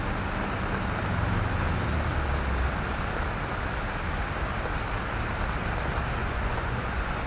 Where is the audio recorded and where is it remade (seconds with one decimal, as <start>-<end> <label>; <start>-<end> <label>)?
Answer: 0.0-6.2 recorded; 6.2-7.3 remade